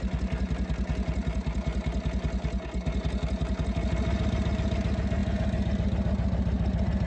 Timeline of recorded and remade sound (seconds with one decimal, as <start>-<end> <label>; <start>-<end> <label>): 0.0-7.1 recorded